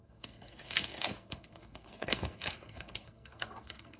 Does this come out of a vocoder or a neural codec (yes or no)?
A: yes